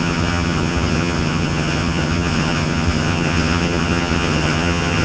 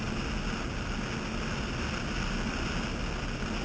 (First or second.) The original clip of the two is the second